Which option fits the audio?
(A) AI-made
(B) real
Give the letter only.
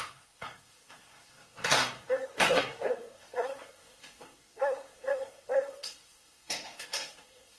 A